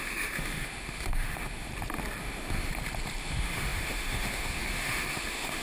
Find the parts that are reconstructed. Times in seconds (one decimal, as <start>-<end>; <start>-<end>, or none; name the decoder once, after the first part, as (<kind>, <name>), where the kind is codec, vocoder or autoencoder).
0.0-1.7 (autoencoder, DAC-VAE); 2.2-2.7; 3.2-5.6